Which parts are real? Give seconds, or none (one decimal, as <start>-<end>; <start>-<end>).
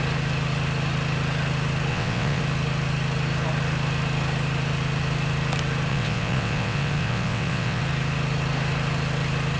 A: 0.0-1.9; 2.4-5.9; 7.8-9.6